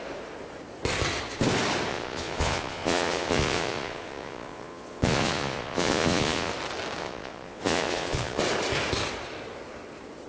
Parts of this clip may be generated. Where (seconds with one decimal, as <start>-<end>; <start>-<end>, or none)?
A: 1.9-6.5; 7.0-8.4